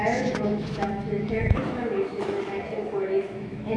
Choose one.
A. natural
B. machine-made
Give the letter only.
B